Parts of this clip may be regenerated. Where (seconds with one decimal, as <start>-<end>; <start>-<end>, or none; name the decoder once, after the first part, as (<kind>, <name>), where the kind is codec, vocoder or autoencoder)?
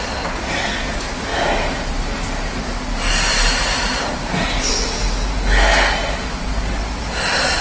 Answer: 1.3-1.9 (vocoder, BigVGAN v2); 3.3-4.7